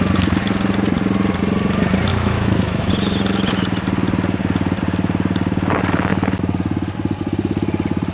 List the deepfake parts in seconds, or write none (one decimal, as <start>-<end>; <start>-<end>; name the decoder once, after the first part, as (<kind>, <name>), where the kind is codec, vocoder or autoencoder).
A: 2.1-2.9 (autoencoder, DAC-VAE)